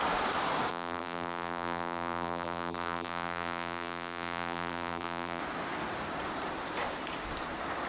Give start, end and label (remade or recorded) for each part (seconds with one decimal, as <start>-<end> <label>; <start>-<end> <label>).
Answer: 0.0-0.7 recorded; 0.7-5.4 remade; 5.4-7.9 recorded